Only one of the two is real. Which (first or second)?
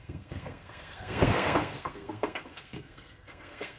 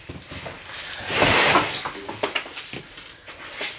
second